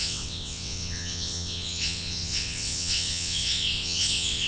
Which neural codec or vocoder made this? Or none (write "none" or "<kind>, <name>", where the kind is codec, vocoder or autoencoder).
vocoder, WaveNeXt